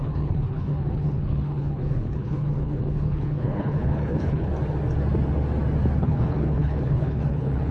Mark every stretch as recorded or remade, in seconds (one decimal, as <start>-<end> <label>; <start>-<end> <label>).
0.0-4.5 remade; 4.5-6.0 recorded; 6.0-7.7 remade